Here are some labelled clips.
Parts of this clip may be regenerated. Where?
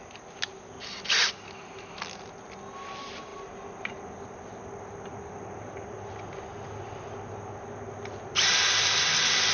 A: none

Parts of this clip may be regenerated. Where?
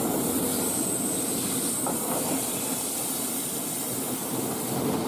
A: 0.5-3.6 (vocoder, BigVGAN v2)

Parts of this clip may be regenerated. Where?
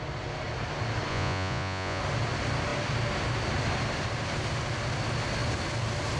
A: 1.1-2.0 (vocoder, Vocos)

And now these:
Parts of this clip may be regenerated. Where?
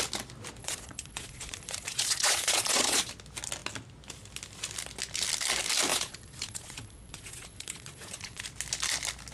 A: 0.6-3.1 (vocoder, Vocos); 5.9-8.4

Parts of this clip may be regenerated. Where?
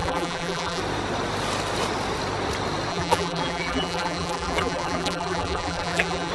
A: 0.0-0.8 (vocoder, BigVGAN v2); 2.9-6.3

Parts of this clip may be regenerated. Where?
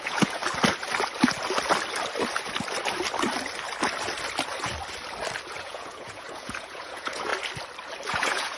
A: 0.0-0.4 (vocoder, Vocos); 5.6-7.3; 8.1-8.6